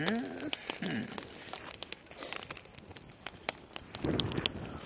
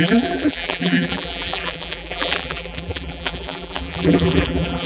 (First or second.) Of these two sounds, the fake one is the second